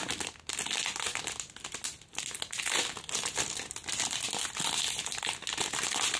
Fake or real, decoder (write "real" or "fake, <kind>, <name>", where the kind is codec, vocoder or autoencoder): real